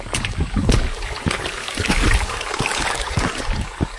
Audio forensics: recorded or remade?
remade